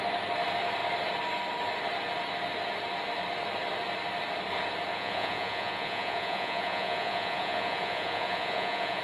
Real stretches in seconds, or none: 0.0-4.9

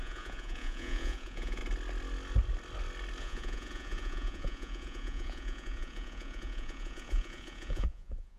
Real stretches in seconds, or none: 1.6-3.2

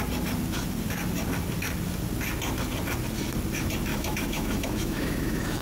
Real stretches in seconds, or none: 0.0-3.9

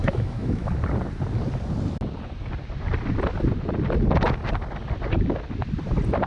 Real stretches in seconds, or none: 0.7-6.3

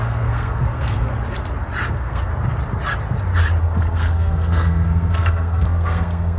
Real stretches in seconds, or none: 1.1-1.9; 2.3-3.6

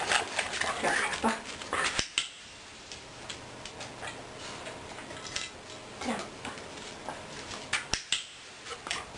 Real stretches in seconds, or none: 0.0-9.2

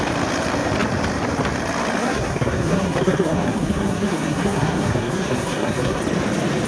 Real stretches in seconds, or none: 0.0-2.0; 6.0-6.7